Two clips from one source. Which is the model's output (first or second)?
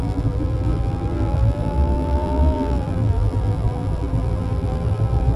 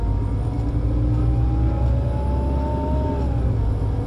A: first